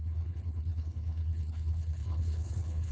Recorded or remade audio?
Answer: remade